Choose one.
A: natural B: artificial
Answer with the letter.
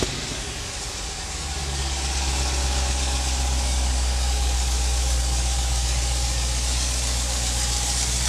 B